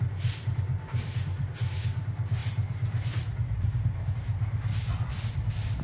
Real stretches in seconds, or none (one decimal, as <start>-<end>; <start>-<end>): none